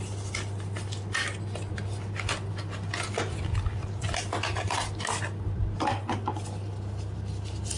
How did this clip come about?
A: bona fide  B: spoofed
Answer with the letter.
A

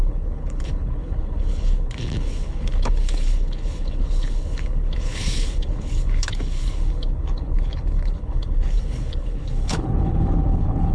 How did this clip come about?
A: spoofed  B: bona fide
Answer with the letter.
A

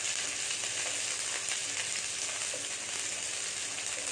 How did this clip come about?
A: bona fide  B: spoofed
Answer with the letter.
A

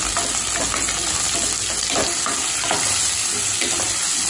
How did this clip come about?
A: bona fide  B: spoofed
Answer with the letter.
A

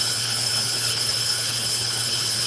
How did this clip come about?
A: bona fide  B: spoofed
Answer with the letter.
B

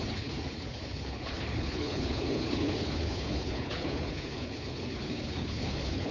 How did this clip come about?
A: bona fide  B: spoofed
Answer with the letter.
B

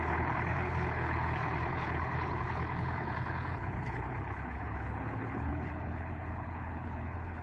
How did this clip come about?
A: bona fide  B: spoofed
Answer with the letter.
B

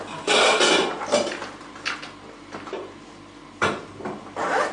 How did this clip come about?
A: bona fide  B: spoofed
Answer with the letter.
A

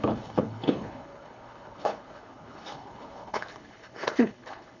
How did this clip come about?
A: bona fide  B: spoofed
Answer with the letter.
B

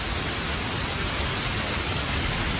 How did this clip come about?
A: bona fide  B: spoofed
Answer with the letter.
A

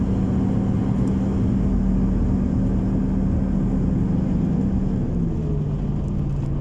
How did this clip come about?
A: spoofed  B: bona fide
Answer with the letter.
B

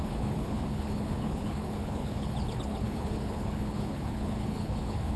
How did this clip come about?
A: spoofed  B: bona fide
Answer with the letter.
A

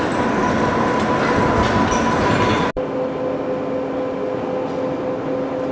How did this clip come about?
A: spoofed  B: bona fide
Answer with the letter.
B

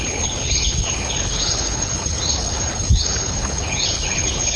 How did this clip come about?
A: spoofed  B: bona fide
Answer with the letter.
A